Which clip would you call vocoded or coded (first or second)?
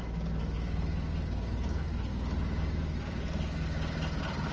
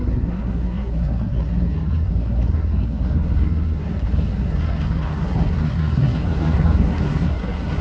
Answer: second